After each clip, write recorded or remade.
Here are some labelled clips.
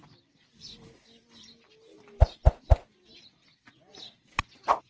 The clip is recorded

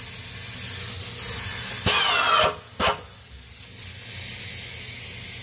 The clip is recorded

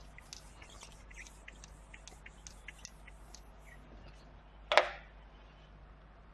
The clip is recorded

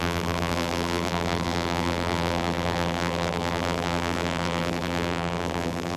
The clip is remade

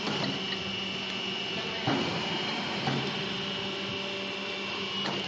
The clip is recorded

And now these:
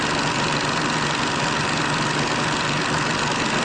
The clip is recorded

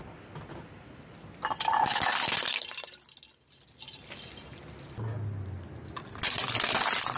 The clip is recorded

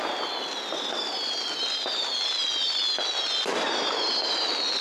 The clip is recorded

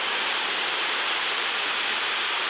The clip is remade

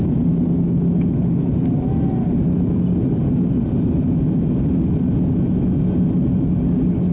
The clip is recorded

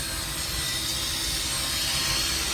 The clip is recorded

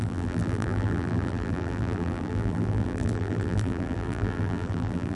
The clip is remade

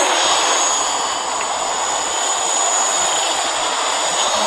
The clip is recorded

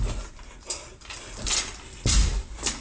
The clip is recorded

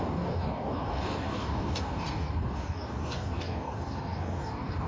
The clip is remade